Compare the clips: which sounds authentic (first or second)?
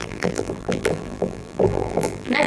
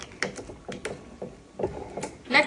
second